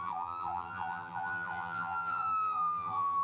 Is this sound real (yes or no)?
no